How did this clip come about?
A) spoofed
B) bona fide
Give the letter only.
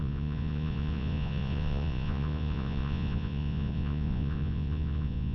A